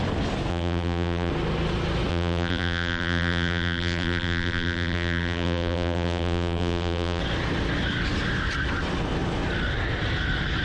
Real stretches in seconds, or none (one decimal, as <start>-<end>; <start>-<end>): 0.0-0.5; 1.3-2.1; 7.2-10.6